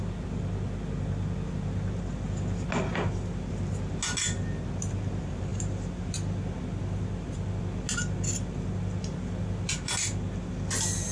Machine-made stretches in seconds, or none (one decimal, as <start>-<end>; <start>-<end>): none